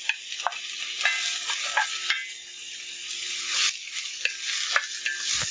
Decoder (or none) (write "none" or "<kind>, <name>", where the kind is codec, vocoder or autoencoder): none